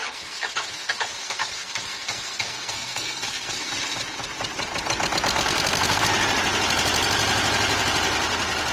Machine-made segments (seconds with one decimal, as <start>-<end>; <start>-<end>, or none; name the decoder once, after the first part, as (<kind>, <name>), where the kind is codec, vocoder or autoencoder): 0.0-3.7 (codec, SNAC); 5.3-6.0